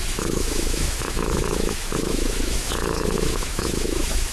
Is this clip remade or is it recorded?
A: remade